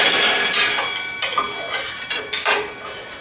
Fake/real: real